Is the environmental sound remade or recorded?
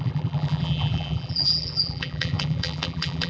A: remade